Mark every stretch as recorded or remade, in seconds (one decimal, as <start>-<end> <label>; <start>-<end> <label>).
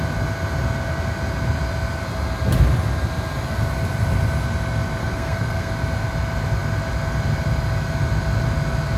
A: 0.0-5.0 recorded; 5.0-5.7 remade; 5.7-9.0 recorded